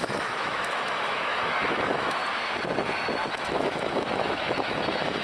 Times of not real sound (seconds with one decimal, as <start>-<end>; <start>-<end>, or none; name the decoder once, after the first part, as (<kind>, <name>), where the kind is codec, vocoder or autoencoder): 0.0-2.2 (autoencoder, DAC-VAE); 3.3-5.2